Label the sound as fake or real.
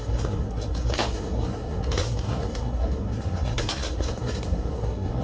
fake